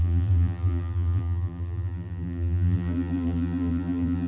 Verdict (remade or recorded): remade